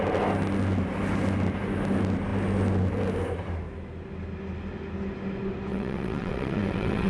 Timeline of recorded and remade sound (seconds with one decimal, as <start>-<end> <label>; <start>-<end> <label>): 0.0-5.7 recorded; 5.7-7.1 remade